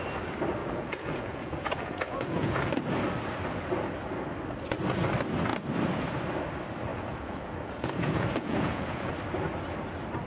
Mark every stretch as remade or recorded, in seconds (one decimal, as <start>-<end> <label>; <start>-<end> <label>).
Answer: 0.0-0.6 recorded; 0.6-2.7 remade; 2.7-6.9 recorded; 6.9-9.1 remade; 9.1-10.3 recorded